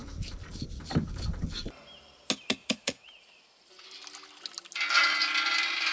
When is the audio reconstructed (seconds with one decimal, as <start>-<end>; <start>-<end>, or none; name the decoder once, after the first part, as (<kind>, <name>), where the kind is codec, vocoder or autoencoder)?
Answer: 2.6-3.2 (vocoder, Vocos)